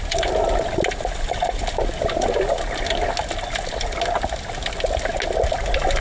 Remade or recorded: recorded